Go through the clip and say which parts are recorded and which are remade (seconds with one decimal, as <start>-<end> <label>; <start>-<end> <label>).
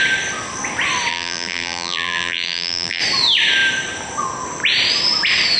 0.0-1.1 recorded; 1.1-3.0 remade; 3.0-5.6 recorded